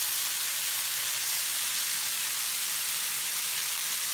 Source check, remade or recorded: recorded